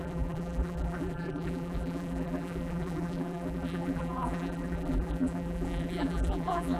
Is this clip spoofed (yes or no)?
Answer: yes